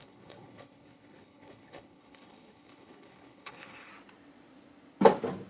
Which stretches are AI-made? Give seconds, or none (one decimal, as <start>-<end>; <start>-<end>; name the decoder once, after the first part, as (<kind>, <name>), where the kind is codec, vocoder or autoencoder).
0.0-3.9 (codec, HILCodec)